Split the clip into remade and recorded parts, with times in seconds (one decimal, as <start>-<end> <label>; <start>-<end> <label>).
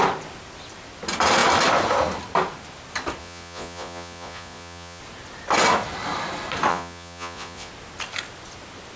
0.0-3.2 recorded; 3.2-5.0 remade; 5.0-6.7 recorded; 6.7-7.7 remade; 7.7-9.0 recorded